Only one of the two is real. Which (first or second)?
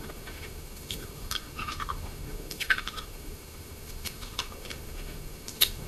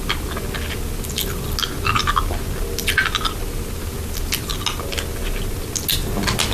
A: second